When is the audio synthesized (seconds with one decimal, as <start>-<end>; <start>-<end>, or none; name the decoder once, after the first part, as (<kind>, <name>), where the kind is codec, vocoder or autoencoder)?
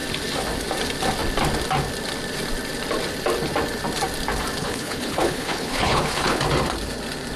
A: 4.6-6.4 (codec, HILCodec)